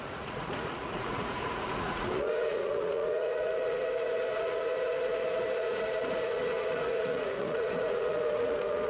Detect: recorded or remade remade